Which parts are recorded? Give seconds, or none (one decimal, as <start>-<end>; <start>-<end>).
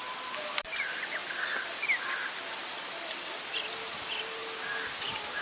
4.4-5.4